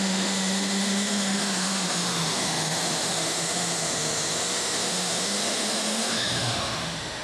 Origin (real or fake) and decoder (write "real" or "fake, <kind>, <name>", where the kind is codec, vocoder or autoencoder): fake, autoencoder, DAC-VAE